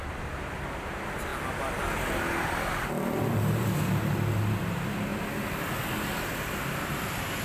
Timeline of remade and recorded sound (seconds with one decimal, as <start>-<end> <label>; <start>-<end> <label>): 0.0-7.4 recorded